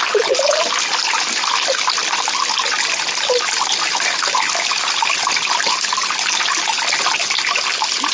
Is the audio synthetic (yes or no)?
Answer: no